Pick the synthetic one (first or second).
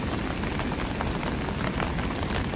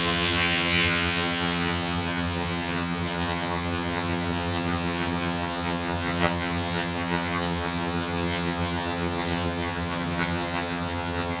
second